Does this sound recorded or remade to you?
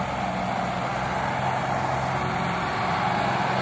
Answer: recorded